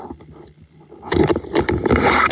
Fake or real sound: real